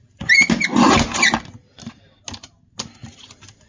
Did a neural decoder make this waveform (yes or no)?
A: no